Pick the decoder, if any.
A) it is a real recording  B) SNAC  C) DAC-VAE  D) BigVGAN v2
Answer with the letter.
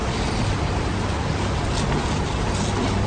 D